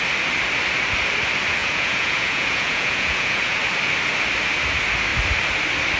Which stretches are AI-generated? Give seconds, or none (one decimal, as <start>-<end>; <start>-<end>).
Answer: 1.6-3.6